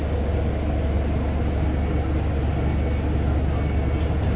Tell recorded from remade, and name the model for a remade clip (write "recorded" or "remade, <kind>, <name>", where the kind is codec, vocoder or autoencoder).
recorded